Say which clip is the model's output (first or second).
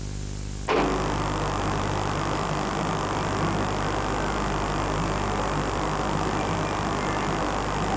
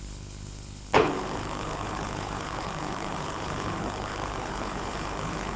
second